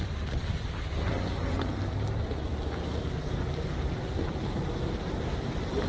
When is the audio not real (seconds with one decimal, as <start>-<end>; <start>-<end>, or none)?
none